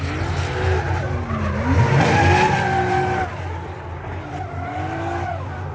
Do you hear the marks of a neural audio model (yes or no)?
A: no